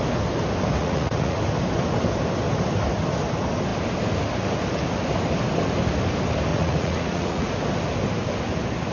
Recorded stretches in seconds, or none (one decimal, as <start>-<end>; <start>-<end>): 0.0-0.8; 1.4-6.5; 7.6-8.9